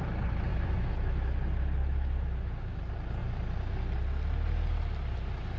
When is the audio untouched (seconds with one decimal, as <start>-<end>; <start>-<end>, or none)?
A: 0.0-0.5; 1.4-1.8; 2.8-5.6